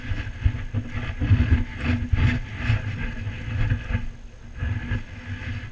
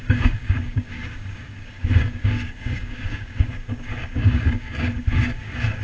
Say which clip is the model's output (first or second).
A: second